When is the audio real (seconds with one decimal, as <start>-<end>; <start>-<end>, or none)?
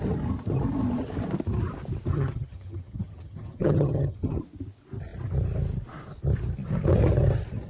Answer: 0.0-2.1; 4.4-7.7